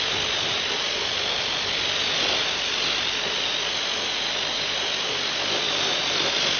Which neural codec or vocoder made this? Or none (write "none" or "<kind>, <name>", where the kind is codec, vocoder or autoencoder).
none